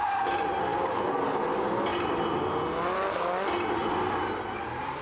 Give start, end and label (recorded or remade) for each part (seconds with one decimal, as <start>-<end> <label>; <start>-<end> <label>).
0.0-5.0 recorded